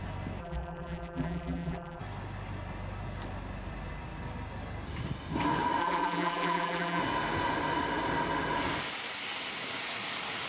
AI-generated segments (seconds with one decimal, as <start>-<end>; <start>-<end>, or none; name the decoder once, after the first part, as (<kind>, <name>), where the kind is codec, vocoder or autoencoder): 0.4-2.0 (vocoder, BigVGAN v2); 5.8-7.0